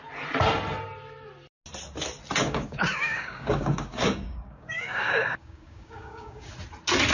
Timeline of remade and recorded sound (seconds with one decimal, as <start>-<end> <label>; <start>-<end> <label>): 0.0-2.4 recorded; 2.4-6.5 remade; 6.5-7.1 recorded

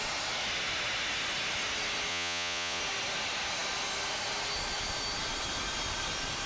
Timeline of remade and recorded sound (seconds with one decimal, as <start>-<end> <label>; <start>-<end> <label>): 0.0-2.1 recorded; 2.1-2.8 remade; 2.8-6.5 recorded

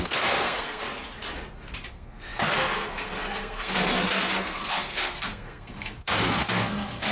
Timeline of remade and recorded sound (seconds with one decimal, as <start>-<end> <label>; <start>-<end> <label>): 0.0-0.8 remade; 0.8-1.9 recorded; 1.9-7.1 remade

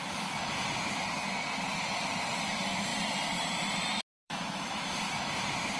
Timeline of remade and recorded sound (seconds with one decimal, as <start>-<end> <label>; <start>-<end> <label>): 0.0-2.9 recorded; 2.9-3.7 remade; 3.7-4.2 recorded; 4.2-5.2 remade; 5.2-5.8 recorded

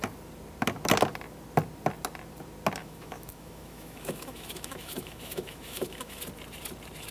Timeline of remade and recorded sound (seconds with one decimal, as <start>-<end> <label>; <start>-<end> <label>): 0.0-2.8 recorded; 2.8-6.2 remade; 6.2-7.1 recorded

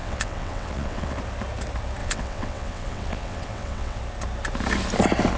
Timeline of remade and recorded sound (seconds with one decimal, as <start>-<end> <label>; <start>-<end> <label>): 0.0-1.2 remade; 1.2-2.0 recorded; 2.0-4.0 remade; 4.0-5.4 recorded

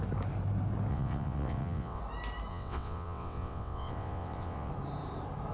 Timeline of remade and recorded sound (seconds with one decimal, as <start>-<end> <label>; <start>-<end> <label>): 0.0-0.9 recorded; 0.9-2.0 remade; 2.0-2.5 recorded; 2.5-4.7 remade; 4.7-5.5 recorded

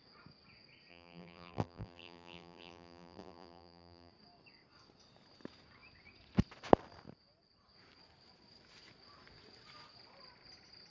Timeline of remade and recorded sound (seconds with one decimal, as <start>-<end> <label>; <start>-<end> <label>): 0.0-0.9 recorded; 0.9-4.1 remade; 4.1-10.9 recorded